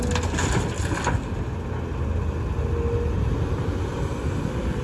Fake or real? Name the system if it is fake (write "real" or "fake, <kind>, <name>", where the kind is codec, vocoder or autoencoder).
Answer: real